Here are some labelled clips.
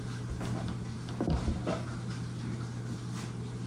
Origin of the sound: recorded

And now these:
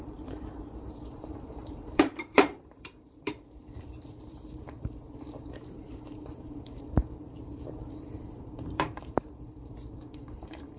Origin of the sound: remade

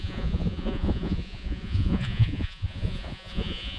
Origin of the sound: remade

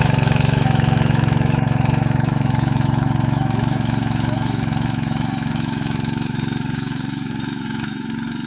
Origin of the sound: remade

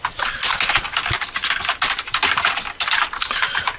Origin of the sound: recorded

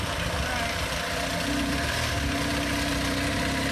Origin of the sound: recorded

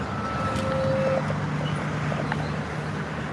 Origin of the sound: recorded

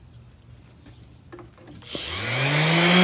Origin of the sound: recorded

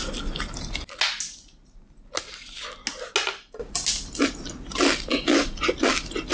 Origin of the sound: recorded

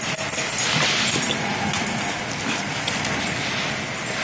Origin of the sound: recorded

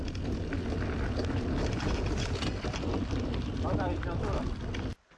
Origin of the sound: recorded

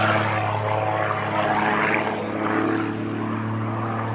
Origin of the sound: recorded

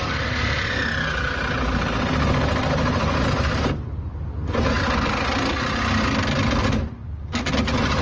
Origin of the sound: recorded